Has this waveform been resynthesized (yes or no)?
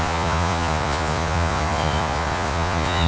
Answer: yes